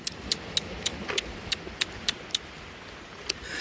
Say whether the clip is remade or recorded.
recorded